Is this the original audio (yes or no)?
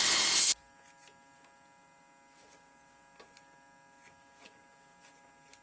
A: yes